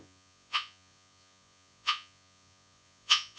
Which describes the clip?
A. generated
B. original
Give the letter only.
A